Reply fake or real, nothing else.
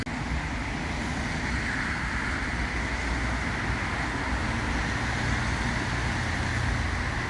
real